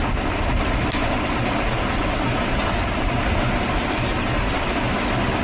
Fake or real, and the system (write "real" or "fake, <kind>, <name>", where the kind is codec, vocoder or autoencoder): real